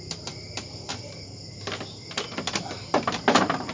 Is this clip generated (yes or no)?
no